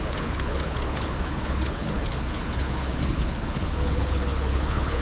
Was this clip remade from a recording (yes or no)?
yes